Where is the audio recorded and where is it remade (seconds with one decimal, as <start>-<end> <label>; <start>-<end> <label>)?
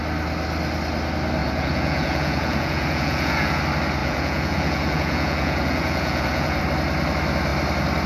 0.0-1.4 recorded; 1.4-3.6 remade; 3.6-4.0 recorded; 4.0-6.6 remade; 6.6-8.1 recorded